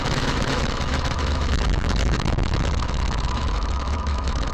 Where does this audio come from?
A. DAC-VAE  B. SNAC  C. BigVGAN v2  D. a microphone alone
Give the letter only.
A